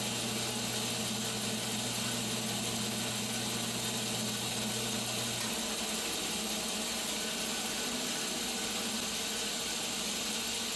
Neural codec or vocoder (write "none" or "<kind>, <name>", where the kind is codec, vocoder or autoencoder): none